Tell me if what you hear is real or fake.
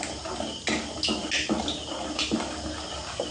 real